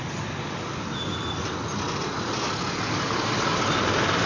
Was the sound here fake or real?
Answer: real